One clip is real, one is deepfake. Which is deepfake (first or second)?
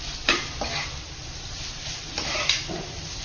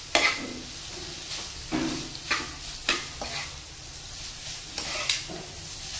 first